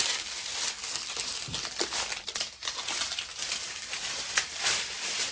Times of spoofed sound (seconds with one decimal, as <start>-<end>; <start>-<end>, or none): none